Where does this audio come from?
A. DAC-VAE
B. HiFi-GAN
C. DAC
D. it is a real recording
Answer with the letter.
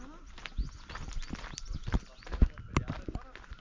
D